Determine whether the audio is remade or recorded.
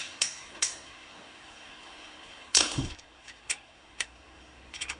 remade